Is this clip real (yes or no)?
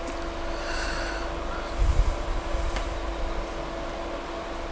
yes